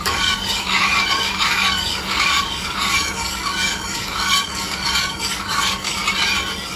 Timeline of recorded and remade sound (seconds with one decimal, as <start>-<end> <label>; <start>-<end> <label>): 0.0-6.0 remade; 6.0-6.8 recorded